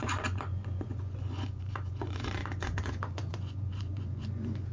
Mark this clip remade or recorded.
remade